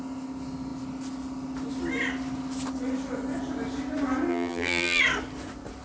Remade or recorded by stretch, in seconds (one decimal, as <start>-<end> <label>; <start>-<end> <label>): 0.0-4.3 recorded; 4.3-5.0 remade; 5.0-5.8 recorded

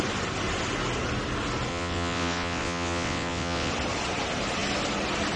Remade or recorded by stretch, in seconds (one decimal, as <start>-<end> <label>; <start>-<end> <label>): 0.0-1.7 recorded; 1.7-3.7 remade; 3.7-5.4 recorded

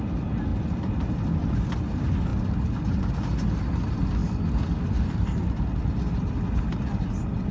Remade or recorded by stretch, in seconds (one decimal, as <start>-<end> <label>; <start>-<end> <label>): 0.0-7.5 recorded

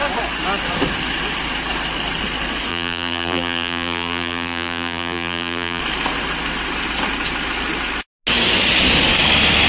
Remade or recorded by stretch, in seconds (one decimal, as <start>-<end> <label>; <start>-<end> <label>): 0.0-2.7 recorded; 2.7-5.8 remade; 5.8-9.7 recorded

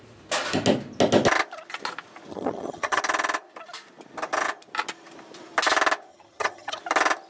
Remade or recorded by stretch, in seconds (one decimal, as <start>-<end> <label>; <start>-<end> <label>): 0.0-2.3 recorded; 2.3-3.0 remade; 3.0-6.1 recorded; 6.1-6.8 remade; 6.8-7.3 recorded